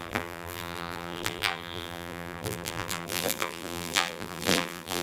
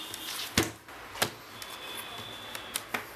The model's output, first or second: first